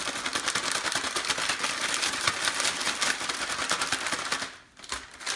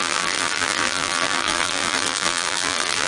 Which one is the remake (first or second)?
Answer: second